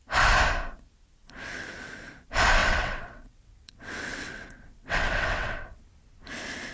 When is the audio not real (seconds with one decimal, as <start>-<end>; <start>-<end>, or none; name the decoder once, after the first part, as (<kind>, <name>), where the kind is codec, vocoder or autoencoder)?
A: 1.2-2.1 (vocoder, WaveNeXt); 2.6-5.8